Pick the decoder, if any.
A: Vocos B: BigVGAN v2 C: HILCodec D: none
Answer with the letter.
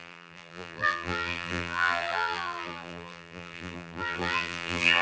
B